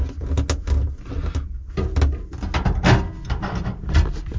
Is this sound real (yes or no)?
yes